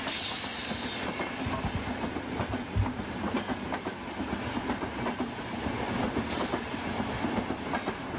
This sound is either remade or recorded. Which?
recorded